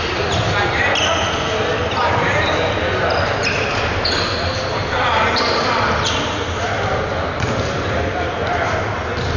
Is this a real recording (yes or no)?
yes